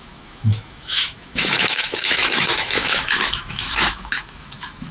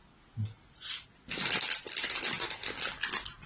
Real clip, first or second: second